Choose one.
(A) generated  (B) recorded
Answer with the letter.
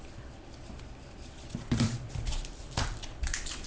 B